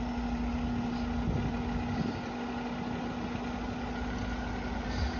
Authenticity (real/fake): real